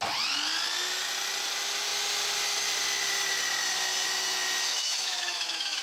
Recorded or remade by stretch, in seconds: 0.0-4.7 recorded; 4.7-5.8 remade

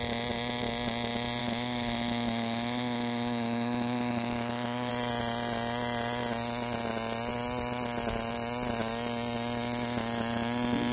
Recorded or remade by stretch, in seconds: 0.0-1.4 recorded; 1.4-4.9 remade; 4.9-10.9 recorded